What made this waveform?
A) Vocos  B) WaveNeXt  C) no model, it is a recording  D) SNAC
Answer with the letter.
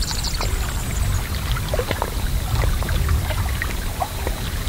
C